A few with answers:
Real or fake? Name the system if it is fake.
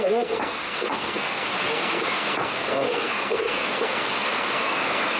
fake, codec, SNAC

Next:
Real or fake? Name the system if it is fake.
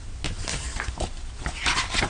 real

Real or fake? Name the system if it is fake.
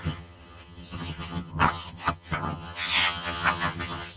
fake, vocoder, HiFi-GAN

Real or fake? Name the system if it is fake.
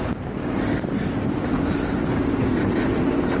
real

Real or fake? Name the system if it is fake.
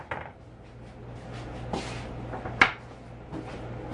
real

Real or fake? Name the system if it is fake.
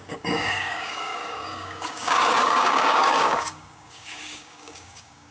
fake, codec, DAC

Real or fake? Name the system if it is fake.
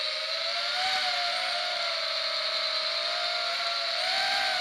real